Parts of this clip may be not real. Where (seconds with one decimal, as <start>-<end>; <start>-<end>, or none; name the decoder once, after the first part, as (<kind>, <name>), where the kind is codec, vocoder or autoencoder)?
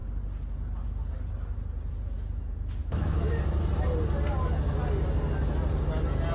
2.8-3.4 (autoencoder, DAC-VAE)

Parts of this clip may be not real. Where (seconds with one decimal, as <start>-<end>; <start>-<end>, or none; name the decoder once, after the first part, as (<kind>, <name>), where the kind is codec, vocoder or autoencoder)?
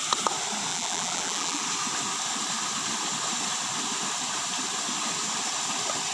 0.7-1.6 (vocoder, BigVGAN v2)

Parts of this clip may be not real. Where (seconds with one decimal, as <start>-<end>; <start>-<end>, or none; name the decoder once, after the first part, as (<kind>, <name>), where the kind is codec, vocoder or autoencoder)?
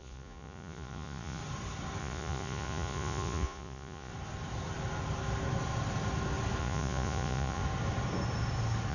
0.0-1.4 (vocoder, Vocos); 2.0-4.1; 6.6-7.6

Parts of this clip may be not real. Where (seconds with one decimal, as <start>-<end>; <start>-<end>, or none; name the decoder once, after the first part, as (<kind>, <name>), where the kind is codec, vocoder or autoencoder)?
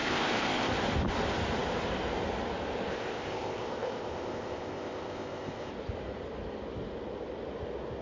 0.0-0.7 (codec, ZipCodec); 2.9-5.7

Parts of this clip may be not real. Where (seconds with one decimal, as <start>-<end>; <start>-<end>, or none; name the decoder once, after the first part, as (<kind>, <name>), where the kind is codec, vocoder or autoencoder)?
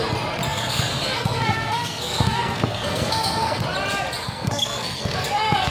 0.5-3.6 (codec, SNAC); 4.2-5.7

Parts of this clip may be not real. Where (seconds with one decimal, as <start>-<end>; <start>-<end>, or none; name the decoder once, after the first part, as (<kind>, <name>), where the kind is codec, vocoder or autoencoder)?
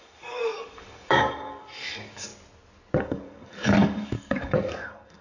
0.0-2.3 (codec, DAC); 3.0-5.2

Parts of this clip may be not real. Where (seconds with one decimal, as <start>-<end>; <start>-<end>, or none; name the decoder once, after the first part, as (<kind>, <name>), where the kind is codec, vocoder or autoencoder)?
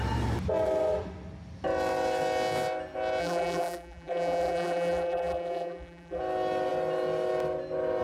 3.2-6.2 (vocoder, BigVGAN v2)